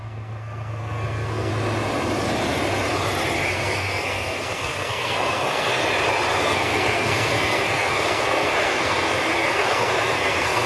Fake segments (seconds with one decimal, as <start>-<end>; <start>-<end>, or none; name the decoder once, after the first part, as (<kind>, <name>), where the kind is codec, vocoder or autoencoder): 0.0-1.5 (codec, SNAC); 3.5-5.8; 6.4-10.7